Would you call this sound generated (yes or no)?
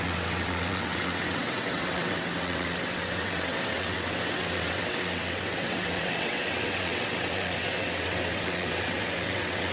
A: yes